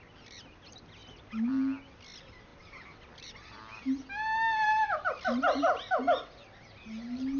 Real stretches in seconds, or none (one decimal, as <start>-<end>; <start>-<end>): 0.0-7.4